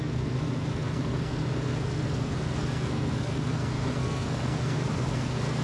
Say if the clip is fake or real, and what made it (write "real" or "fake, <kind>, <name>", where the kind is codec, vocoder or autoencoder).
fake, codec, SNAC